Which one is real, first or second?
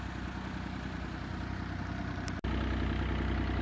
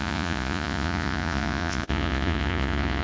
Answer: first